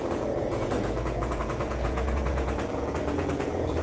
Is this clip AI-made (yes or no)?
yes